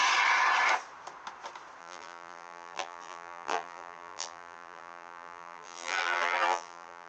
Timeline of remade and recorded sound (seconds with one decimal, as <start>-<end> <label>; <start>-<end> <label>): 0.0-1.8 recorded; 1.8-7.1 remade